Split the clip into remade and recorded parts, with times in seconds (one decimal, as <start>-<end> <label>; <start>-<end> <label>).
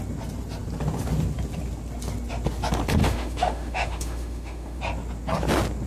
0.0-3.0 recorded; 3.0-4.8 remade; 4.8-5.9 recorded